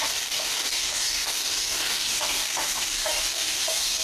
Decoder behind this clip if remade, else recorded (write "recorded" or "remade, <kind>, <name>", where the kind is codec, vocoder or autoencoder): remade, codec, DAC